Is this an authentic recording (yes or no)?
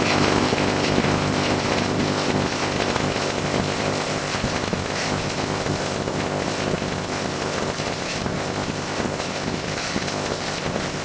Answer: no